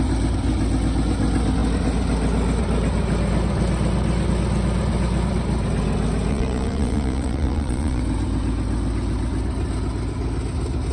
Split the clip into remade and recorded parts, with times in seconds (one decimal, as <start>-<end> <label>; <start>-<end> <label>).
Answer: 0.0-6.3 recorded; 6.3-8.0 remade; 8.0-10.9 recorded